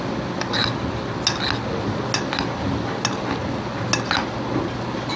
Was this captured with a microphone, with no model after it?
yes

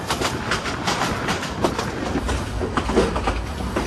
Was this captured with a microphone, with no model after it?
yes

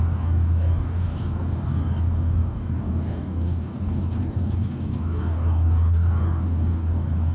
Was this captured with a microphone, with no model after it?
no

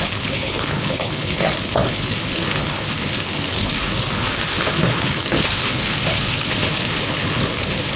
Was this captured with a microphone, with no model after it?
no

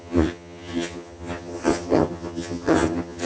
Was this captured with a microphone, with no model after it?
no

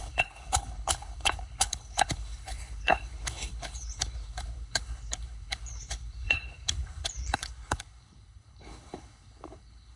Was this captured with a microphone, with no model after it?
no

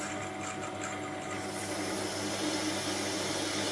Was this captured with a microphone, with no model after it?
yes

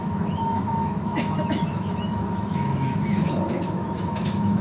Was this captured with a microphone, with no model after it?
no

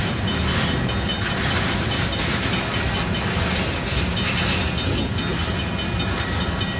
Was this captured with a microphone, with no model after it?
yes